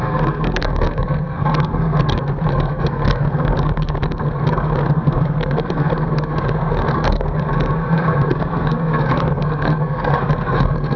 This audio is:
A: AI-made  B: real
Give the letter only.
A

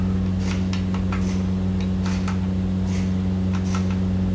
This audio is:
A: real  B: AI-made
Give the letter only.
A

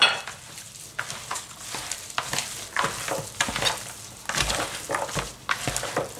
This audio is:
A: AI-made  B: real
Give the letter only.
B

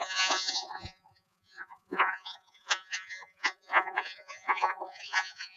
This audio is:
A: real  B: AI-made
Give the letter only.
B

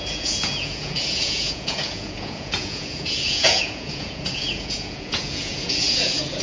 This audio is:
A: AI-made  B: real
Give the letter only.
A